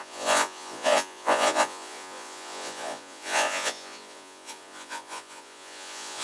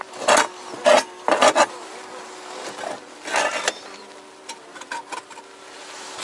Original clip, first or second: second